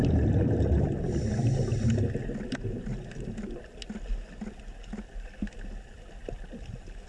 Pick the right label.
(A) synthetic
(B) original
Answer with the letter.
B